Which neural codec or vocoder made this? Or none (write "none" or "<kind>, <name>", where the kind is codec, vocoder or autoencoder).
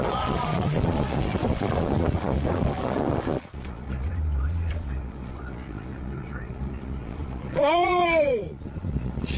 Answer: vocoder, Vocos